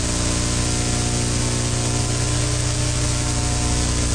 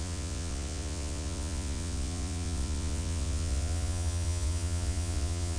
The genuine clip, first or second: first